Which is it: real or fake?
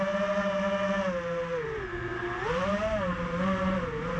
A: real